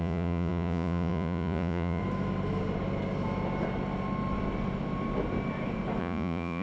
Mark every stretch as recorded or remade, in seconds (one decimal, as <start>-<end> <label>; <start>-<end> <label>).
0.0-2.0 remade; 2.0-6.0 recorded; 6.0-6.6 remade